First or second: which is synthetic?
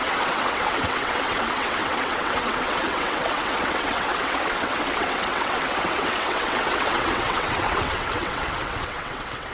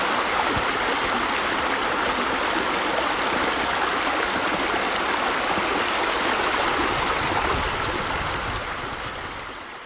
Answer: first